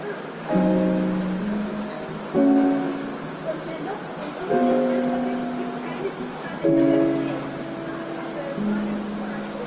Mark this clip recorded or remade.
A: recorded